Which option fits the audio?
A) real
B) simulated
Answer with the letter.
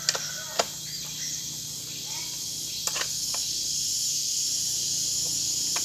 A